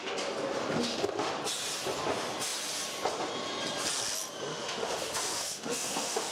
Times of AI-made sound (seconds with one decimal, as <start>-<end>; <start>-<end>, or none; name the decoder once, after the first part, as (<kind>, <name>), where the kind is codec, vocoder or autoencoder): 0.8-1.3 (autoencoder, DAC-VAE); 4.5-6.3